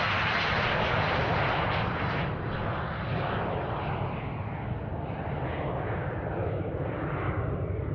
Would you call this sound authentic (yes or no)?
yes